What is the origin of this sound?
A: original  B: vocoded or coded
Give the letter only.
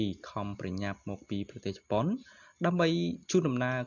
A